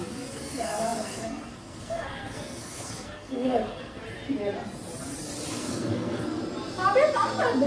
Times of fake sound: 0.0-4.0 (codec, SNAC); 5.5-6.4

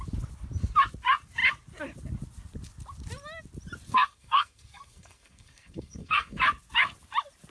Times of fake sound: 3.9-6.4 (codec, SNAC)